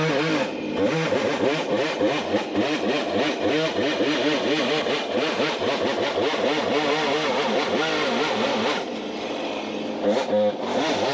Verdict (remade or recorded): recorded